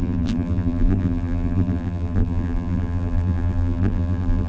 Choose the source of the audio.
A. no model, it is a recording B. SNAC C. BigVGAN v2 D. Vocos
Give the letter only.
C